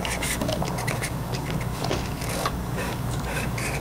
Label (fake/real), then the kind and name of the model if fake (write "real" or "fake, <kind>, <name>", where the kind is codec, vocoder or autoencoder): fake, codec, DAC